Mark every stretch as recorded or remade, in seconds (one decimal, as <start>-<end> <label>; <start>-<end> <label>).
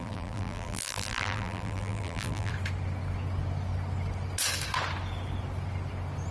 0.0-2.5 remade; 2.5-6.3 recorded